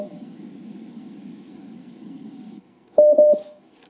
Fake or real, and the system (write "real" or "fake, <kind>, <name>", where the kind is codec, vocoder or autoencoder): fake, codec, SNAC